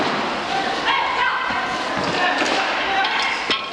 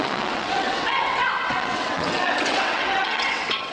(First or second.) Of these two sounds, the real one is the first